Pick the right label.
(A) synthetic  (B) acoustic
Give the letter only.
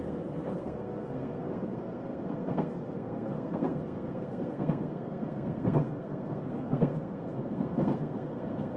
A